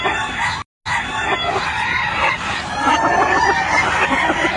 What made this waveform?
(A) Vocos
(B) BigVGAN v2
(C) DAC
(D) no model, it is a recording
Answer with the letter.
D